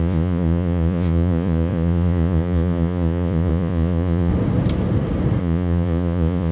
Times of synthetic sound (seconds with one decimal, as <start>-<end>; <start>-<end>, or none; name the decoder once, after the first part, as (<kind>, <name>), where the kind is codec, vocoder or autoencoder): 0.0-4.3 (vocoder, Vocos); 5.4-6.5